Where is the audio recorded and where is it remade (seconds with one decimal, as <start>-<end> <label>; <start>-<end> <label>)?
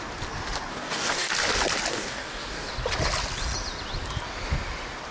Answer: 0.0-0.7 recorded; 0.7-1.3 remade; 1.3-1.9 recorded; 1.9-2.7 remade; 2.7-5.1 recorded